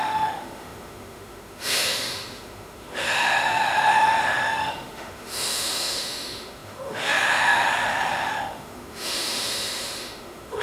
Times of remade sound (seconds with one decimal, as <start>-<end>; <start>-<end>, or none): 0.0-10.6